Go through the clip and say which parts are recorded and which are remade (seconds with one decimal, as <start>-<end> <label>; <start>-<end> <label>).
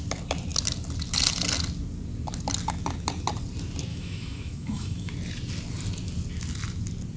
0.0-3.9 recorded; 3.9-5.1 remade; 5.1-7.2 recorded